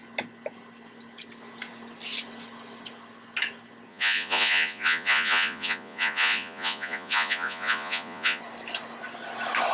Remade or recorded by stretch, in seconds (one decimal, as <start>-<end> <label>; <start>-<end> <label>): 0.0-3.9 recorded; 3.9-8.4 remade; 8.4-9.7 recorded